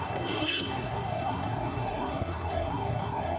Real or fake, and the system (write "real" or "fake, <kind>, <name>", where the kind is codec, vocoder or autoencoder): fake, codec, SNAC